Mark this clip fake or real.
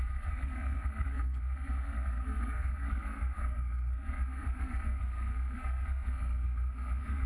fake